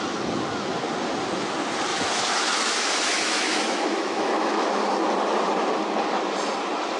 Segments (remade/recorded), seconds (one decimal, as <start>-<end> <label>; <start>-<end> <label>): 0.0-1.9 recorded; 1.9-4.9 remade; 4.9-7.0 recorded